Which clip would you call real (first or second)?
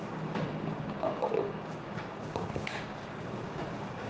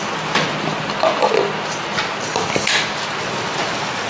second